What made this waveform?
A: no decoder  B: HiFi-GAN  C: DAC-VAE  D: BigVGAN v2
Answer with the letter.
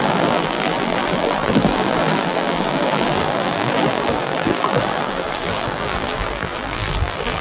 D